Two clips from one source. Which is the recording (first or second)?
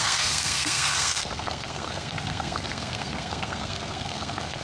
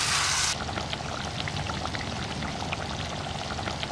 second